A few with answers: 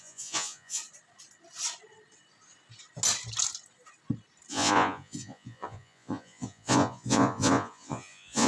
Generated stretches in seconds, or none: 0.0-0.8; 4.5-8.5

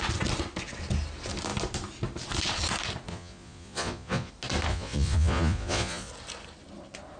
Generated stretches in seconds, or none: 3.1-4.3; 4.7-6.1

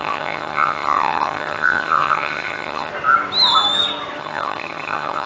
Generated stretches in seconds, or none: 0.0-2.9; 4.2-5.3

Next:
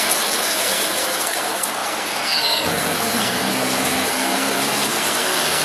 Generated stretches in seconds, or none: 0.0-5.6